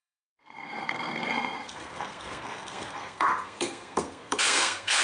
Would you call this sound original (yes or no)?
no